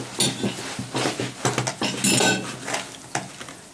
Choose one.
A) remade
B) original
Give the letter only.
B